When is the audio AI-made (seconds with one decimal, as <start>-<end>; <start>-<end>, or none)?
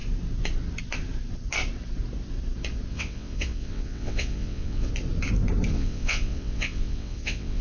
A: 2.9-4.9; 5.7-7.6